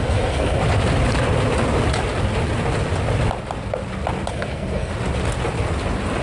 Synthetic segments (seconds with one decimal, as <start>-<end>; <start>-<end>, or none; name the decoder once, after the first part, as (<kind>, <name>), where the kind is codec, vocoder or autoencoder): 0.0-0.6 (codec, SNAC); 4.3-4.9